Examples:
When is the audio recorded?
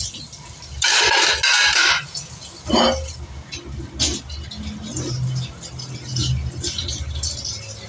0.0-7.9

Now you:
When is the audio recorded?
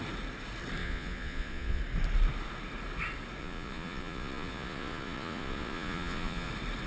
0.0-0.8; 1.8-3.4; 6.5-6.9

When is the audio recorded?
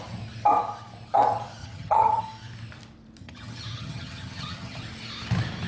0.0-1.6; 2.2-3.2; 4.8-5.7